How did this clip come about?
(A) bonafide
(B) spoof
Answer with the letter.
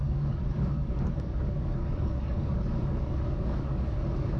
B